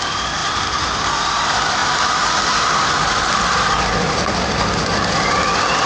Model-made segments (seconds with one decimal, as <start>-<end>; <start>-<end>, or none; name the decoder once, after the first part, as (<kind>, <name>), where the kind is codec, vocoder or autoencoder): none